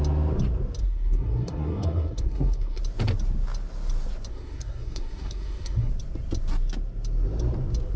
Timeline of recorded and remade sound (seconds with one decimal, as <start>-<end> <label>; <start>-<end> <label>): 0.0-0.8 recorded; 0.8-2.8 remade; 2.8-4.3 recorded; 4.3-5.9 remade; 5.9-8.0 recorded